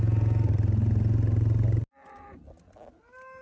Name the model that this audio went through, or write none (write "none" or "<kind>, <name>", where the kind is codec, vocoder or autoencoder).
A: none